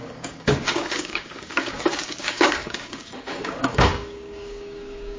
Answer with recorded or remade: remade